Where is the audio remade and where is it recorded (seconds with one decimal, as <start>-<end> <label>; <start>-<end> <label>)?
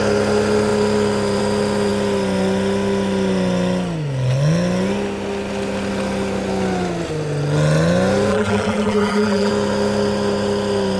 0.0-8.3 recorded; 8.3-9.5 remade; 9.5-11.0 recorded